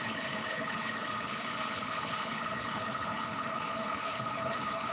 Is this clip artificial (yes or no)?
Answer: yes